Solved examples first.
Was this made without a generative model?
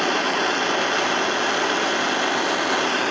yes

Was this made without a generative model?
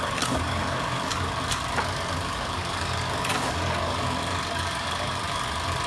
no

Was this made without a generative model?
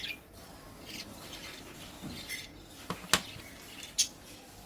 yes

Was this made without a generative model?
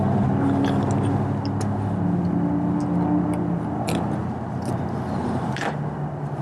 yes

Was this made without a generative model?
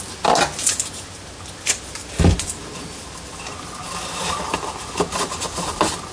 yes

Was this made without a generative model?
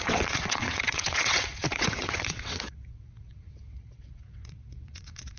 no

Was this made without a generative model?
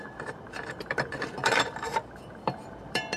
no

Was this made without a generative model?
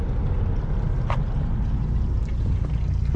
yes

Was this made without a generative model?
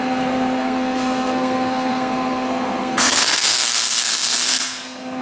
no